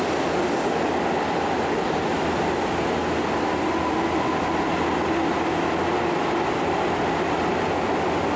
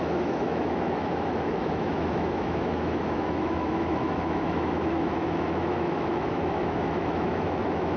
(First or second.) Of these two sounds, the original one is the first